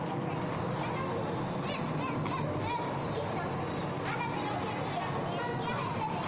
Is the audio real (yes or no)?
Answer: yes